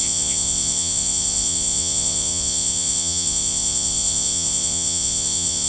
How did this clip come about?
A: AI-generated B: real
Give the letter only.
A